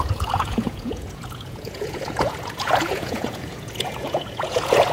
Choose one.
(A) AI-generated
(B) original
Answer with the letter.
A